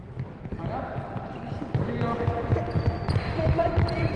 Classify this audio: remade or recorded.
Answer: recorded